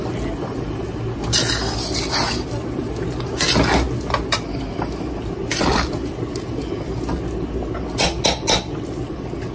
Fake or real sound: real